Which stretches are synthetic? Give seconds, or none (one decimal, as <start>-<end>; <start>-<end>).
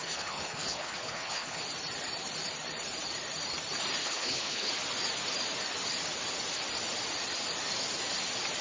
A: 0.0-1.6; 4.0-4.7